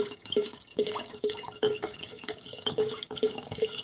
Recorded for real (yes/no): no